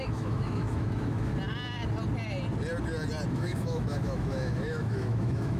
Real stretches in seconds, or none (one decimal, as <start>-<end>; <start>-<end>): 1.3-3.3